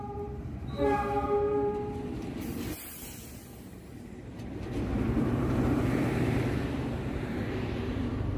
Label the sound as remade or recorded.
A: remade